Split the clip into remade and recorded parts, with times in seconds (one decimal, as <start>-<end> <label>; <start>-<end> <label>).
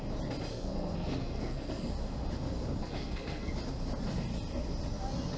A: 0.0-0.5 recorded; 0.5-1.9 remade; 1.9-2.8 recorded; 2.8-3.5 remade; 3.5-5.4 recorded